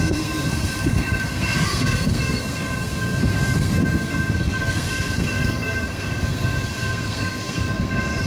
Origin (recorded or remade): remade